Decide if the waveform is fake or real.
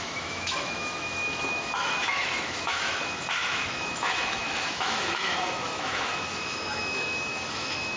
fake